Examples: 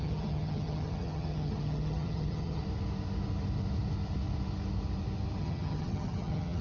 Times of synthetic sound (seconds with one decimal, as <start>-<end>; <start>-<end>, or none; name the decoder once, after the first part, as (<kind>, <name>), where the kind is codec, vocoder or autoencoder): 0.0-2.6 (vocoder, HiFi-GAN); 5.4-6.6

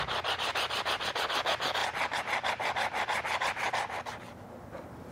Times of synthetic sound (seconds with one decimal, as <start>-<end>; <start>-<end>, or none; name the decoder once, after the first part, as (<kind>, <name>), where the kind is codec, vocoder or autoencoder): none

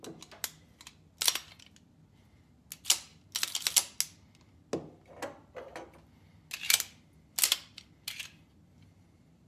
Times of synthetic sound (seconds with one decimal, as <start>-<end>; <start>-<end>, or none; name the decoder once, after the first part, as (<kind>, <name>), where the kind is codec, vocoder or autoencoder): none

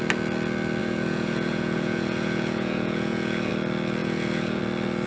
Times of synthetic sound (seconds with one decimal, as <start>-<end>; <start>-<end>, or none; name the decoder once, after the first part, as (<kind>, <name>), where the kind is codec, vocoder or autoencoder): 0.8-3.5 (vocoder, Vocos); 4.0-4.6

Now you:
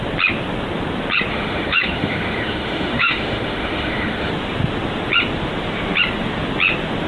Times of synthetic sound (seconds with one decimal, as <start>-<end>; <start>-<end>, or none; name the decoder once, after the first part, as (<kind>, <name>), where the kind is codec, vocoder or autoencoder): 1.3-4.3 (autoencoder, DAC-VAE)

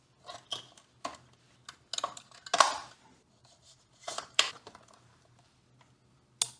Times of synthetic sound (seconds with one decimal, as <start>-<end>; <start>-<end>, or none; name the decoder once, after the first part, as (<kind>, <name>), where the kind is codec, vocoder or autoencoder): 3.4-5.6 (vocoder, BigVGAN v2)

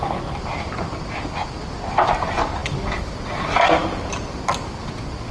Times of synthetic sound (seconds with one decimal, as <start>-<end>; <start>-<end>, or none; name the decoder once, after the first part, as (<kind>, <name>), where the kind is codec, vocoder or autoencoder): none